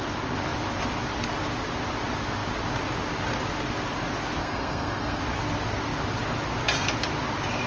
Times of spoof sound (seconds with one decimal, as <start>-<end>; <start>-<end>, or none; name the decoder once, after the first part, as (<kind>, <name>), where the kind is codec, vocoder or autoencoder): 4.4-5.2 (codec, SNAC)